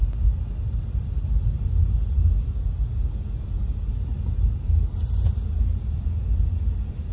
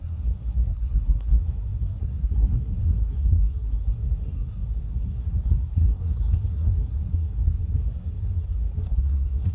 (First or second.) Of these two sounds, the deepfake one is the second